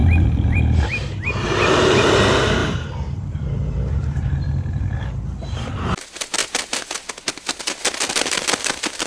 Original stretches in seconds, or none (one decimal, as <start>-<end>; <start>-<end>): 2.2-2.6; 4.4-9.1